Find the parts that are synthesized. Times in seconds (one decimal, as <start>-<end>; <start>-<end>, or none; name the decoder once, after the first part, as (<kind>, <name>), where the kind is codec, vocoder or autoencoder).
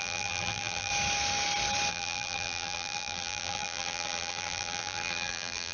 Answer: 0.0-0.9 (vocoder, BigVGAN v2); 1.9-5.7